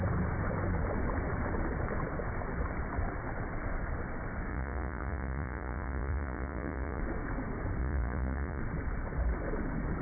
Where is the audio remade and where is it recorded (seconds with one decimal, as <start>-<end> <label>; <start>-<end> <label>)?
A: 0.0-4.5 recorded; 4.5-7.0 remade; 7.0-7.8 recorded; 7.8-8.6 remade; 8.6-10.0 recorded